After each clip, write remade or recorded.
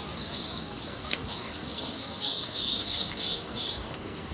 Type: remade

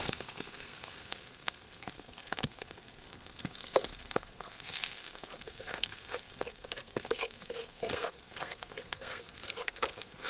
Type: remade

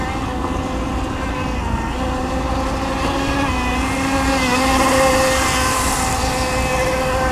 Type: recorded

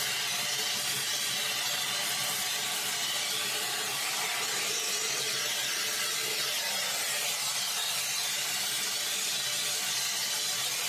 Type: recorded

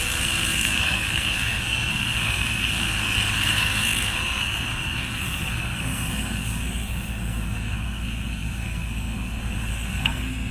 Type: remade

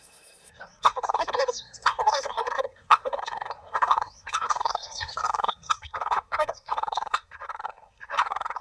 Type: remade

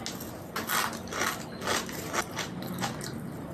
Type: recorded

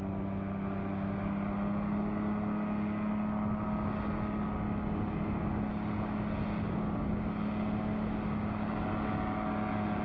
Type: recorded